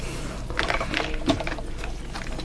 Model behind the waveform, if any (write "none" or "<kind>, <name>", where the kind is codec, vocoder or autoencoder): none